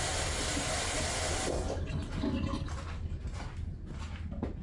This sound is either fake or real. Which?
real